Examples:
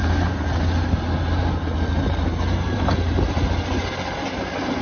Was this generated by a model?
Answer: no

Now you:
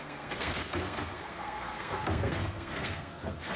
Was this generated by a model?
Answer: yes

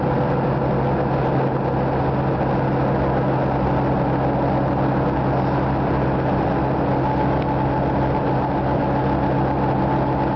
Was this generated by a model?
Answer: no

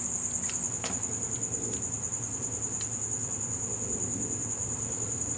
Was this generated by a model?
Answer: no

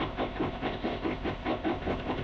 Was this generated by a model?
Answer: yes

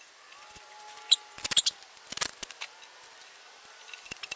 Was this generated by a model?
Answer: no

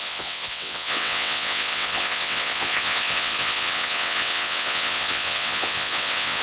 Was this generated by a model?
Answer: yes